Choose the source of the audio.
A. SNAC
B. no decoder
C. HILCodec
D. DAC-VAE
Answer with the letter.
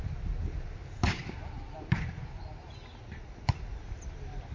B